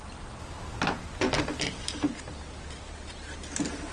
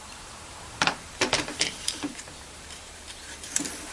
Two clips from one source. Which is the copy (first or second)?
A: second